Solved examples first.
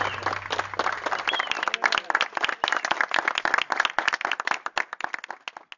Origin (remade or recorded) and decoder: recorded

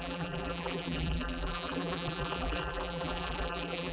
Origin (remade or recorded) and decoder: remade, vocoder, BigVGAN v2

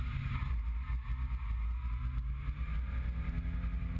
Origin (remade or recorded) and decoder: recorded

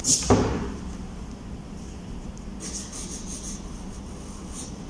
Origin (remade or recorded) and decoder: recorded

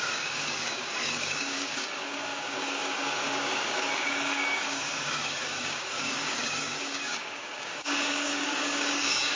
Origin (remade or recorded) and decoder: remade, codec, DAC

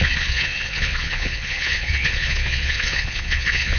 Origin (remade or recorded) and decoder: remade, vocoder, Vocos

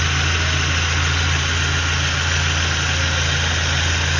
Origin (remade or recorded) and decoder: recorded